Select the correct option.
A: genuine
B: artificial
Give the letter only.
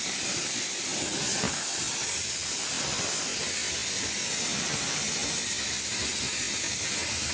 A